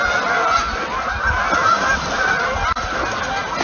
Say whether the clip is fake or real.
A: real